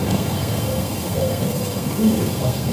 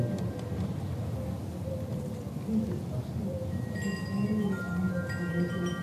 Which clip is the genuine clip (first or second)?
second